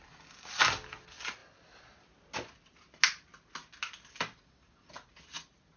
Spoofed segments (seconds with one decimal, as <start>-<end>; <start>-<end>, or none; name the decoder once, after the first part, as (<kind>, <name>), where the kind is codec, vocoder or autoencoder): none